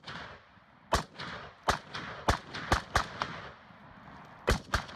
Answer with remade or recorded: recorded